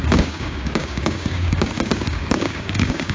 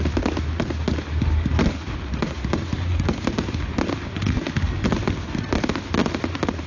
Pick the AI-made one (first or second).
first